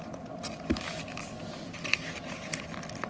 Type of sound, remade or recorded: recorded